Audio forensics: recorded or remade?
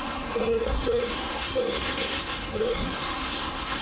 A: remade